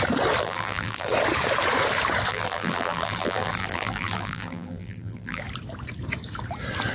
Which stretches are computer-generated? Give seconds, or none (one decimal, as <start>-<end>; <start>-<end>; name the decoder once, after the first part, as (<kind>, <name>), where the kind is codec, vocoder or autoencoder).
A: 0.4-1.1 (vocoder, BigVGAN v2); 2.3-5.4